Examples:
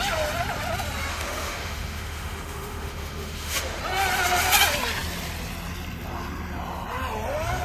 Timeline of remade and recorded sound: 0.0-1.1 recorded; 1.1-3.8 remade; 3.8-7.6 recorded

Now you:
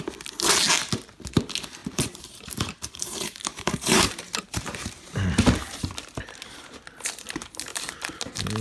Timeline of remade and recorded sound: 0.0-1.8 recorded; 1.8-5.1 remade; 5.1-8.6 recorded

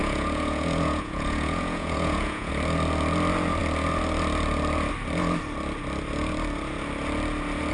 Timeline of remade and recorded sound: 0.0-2.5 remade; 2.5-7.7 recorded

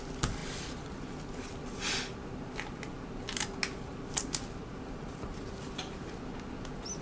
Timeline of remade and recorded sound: 0.0-7.0 recorded

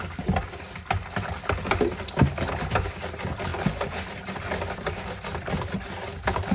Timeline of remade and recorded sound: 0.0-6.5 recorded

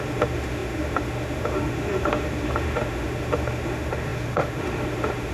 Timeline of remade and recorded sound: 0.0-5.3 remade